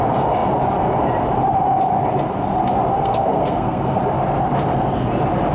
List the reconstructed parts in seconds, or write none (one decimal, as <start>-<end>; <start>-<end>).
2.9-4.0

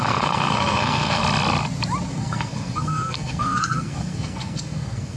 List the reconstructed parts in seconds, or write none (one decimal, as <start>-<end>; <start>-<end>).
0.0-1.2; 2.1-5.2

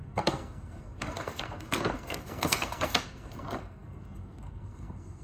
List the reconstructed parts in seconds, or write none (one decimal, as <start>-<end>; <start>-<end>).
0.0-5.2